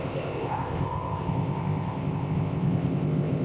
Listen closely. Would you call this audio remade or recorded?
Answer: remade